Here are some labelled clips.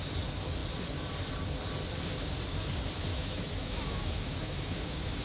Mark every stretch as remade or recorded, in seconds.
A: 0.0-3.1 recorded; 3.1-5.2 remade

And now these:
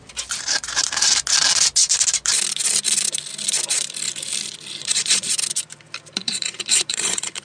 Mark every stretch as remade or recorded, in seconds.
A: 0.0-4.8 recorded; 4.8-5.3 remade; 5.3-6.2 recorded; 6.2-7.4 remade

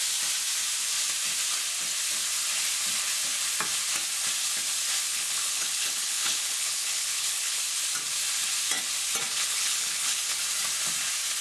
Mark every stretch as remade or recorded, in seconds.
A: 0.0-5.1 recorded; 5.1-7.6 remade; 7.6-9.3 recorded; 9.3-10.4 remade; 10.4-11.4 recorded

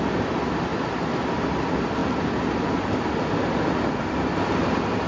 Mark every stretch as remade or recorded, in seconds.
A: 0.0-5.1 recorded

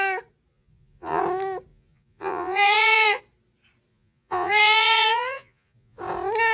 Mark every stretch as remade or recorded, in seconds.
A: 0.0-0.5 recorded; 0.5-1.2 remade; 1.2-1.7 recorded; 1.7-3.2 remade; 3.2-3.9 recorded; 3.9-6.0 remade; 6.0-6.5 recorded

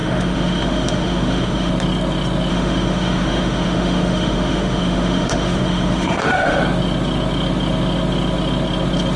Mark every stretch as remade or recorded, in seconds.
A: 0.0-1.7 remade; 1.7-2.5 recorded; 2.5-6.6 remade; 6.6-9.2 recorded

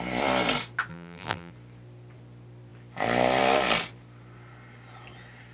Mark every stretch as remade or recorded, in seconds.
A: 0.0-0.9 recorded; 0.9-1.5 remade; 1.5-5.5 recorded